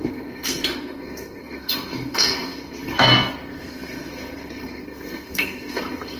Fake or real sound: fake